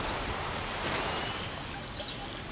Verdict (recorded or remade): recorded